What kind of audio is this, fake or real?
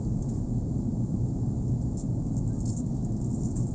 real